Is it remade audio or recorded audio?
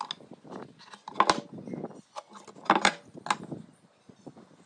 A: recorded